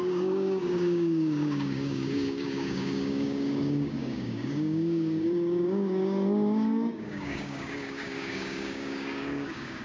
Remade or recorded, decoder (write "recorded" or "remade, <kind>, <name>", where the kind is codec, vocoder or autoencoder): remade, codec, DAC